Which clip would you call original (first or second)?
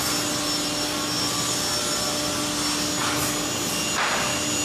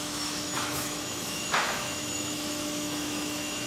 first